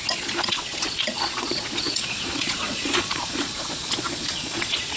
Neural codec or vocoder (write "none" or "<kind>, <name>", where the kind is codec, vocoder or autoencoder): vocoder, Vocos